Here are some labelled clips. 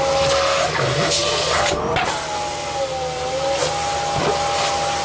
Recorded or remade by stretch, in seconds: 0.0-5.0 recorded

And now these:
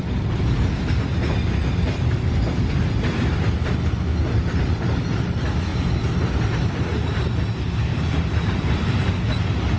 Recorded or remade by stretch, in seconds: 0.0-7.9 recorded; 7.9-9.0 remade; 9.0-9.8 recorded

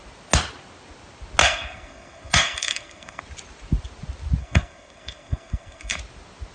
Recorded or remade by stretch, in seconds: 0.0-1.4 recorded; 1.4-3.2 remade; 3.2-4.4 recorded; 4.4-6.0 remade; 6.0-6.5 recorded

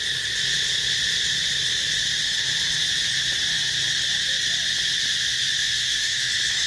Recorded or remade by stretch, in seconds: 0.0-5.6 recorded; 5.6-6.3 remade; 6.3-6.7 recorded

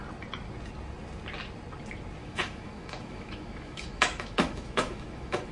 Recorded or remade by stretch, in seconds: 0.0-2.2 recorded; 2.2-5.5 remade